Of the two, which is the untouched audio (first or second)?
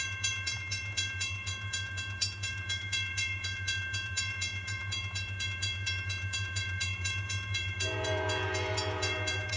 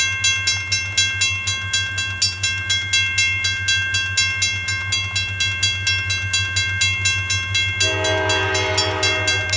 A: second